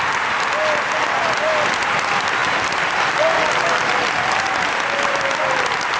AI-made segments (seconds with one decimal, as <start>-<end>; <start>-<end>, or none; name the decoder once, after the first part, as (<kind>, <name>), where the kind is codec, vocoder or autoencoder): none